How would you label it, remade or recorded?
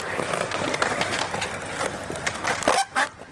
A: recorded